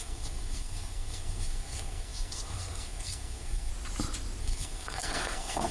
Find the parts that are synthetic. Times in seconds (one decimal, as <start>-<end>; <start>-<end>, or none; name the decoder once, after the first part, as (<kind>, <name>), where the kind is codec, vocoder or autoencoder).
0.0-3.7 (codec, SNAC); 4.4-5.7